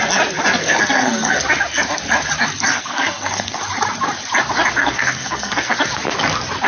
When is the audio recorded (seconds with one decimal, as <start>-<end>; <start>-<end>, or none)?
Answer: 0.0-0.6; 1.4-2.7; 3.6-4.8; 5.7-6.7

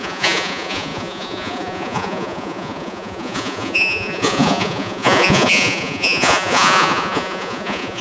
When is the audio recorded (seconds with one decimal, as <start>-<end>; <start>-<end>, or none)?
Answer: none